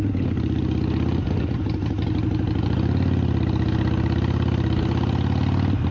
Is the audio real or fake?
real